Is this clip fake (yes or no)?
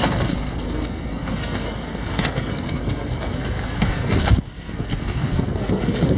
yes